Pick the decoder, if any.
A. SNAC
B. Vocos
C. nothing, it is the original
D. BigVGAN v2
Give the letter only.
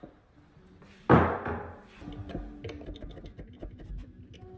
C